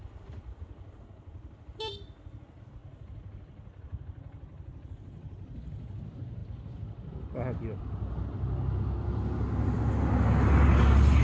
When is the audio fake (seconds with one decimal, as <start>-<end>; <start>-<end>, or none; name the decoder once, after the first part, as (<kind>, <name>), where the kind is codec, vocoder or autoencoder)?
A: none